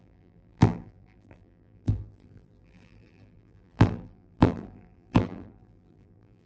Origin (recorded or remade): remade